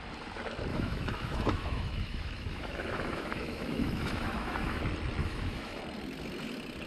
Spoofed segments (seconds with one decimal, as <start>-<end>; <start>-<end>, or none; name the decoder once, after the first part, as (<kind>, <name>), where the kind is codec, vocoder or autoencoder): 0.7-4.8 (autoencoder, DAC-VAE); 5.2-5.8